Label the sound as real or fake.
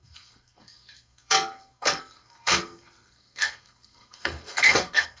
fake